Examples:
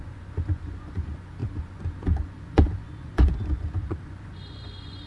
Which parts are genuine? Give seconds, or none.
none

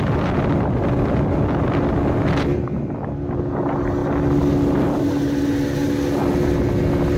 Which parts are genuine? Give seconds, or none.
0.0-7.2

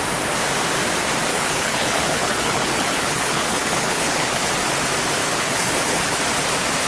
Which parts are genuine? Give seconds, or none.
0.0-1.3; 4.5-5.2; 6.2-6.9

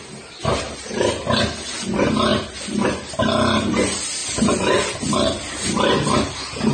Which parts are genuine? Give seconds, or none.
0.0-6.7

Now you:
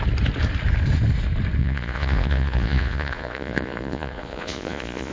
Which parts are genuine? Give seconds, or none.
0.0-1.6

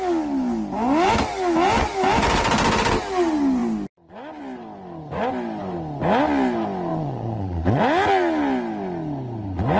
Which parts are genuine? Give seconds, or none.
0.0-6.9; 7.8-9.8

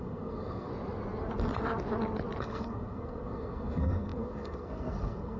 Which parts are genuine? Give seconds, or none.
0.7-2.4

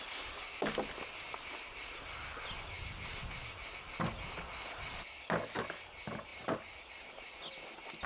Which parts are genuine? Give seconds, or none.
0.0-8.1